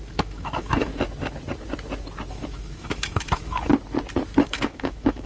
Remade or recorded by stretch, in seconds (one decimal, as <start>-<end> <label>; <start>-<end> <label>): 0.0-0.9 remade; 0.9-2.3 recorded; 2.3-3.7 remade; 3.7-4.4 recorded; 4.4-5.3 remade